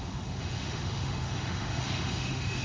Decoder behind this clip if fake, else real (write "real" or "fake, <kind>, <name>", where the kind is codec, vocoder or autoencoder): fake, autoencoder, DAC-VAE